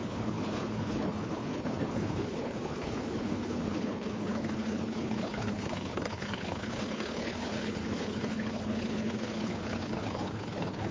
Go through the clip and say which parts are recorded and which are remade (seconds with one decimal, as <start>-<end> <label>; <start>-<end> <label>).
0.0-10.9 remade